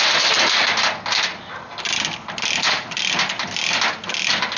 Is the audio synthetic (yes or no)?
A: no